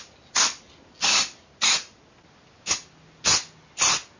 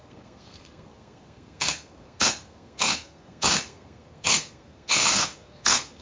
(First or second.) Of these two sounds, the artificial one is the second